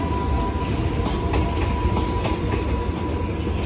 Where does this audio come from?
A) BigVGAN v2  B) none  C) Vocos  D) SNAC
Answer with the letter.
B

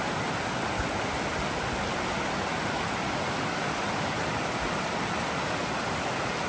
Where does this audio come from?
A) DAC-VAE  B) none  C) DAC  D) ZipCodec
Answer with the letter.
B